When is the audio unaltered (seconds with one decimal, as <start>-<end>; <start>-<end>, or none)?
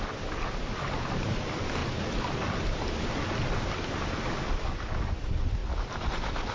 0.0-6.5